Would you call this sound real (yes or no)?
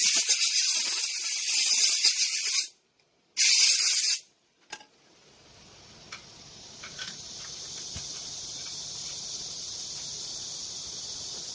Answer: yes